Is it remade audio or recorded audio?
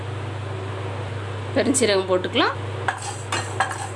recorded